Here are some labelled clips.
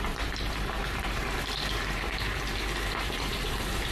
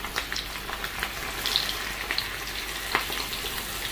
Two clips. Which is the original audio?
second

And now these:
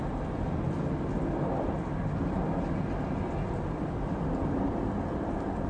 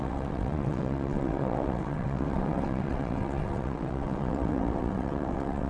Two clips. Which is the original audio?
first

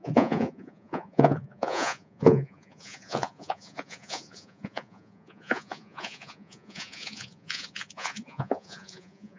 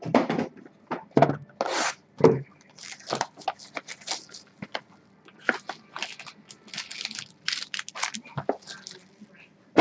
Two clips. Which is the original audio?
second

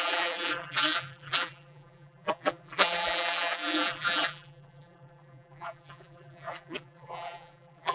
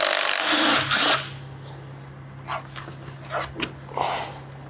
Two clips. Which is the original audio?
second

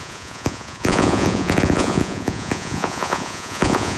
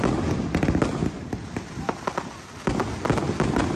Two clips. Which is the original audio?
second